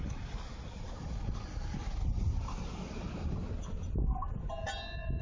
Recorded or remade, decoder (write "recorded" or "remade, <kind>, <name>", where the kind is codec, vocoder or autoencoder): recorded